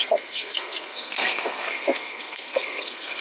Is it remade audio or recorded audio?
remade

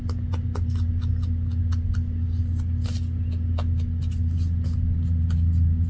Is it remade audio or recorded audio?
recorded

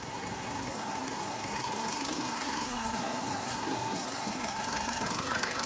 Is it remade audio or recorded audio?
remade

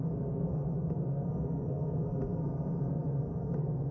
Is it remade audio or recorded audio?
remade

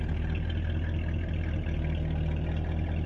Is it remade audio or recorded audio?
recorded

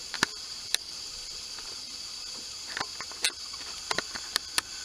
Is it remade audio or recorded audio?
recorded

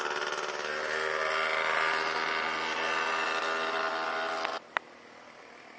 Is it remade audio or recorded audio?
recorded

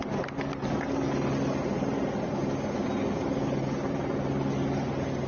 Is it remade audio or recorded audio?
recorded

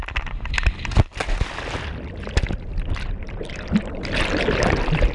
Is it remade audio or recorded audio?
recorded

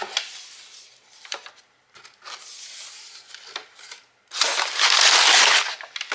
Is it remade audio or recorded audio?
recorded